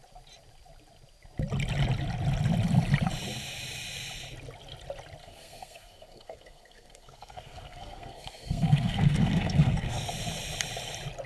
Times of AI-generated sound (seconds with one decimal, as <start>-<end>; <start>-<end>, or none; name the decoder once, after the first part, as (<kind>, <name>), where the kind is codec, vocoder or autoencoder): 5.2-10.1 (codec, SNAC)